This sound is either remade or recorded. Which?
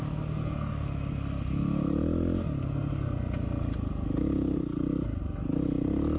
recorded